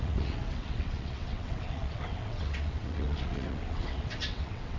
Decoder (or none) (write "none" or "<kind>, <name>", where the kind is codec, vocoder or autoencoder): vocoder, WaveNeXt